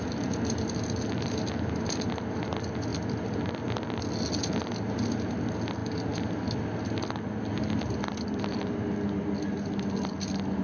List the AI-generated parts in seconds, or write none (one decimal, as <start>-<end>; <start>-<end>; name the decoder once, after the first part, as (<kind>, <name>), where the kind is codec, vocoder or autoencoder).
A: 2.9-4.0 (vocoder, BigVGAN v2)

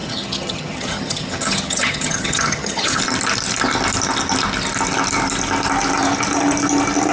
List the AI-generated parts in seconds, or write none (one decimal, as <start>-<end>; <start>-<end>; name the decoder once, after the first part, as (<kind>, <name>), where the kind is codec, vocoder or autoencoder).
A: 0.0-3.0 (vocoder, HiFi-GAN)

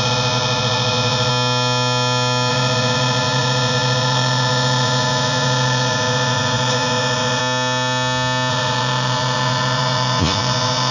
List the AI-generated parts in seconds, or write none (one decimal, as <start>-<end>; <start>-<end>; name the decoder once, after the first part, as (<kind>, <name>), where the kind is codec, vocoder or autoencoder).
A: 0.0-1.3 (vocoder, Vocos); 2.5-7.4; 8.5-10.9

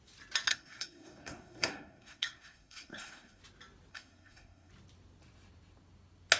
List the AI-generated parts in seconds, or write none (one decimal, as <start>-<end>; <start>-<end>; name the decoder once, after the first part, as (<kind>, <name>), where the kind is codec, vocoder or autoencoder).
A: 0.5-3.4 (codec, SNAC); 3.9-4.7

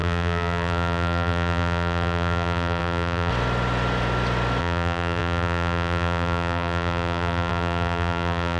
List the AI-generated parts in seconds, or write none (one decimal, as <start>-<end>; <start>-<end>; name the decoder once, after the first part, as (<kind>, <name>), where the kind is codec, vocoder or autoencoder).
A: 0.0-3.3 (vocoder, BigVGAN v2); 4.6-8.6

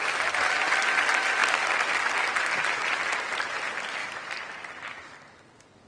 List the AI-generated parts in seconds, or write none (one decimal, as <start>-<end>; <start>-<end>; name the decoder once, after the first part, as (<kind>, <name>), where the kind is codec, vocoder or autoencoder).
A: none

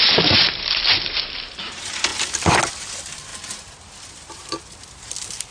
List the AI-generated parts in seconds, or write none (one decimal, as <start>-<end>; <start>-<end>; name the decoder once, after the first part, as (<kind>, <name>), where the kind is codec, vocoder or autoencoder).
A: 3.3-4.6 (vocoder, BigVGAN v2)